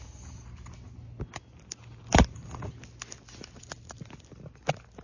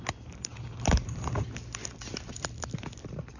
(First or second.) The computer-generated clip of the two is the second